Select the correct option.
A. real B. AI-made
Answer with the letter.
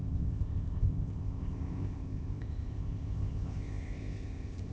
B